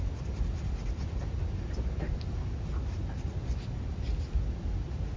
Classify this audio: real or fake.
real